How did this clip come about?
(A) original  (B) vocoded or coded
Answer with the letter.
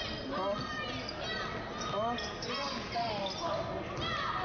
A